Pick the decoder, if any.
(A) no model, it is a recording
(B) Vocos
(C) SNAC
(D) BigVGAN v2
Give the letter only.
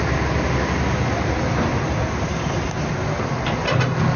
A